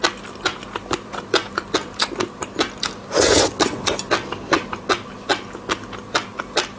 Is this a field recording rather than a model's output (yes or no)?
yes